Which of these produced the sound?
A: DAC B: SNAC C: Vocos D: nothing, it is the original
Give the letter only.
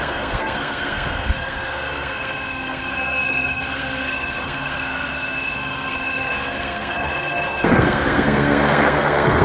B